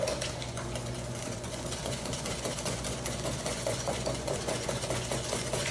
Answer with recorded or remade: remade